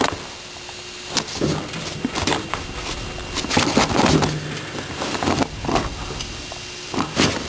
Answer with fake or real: real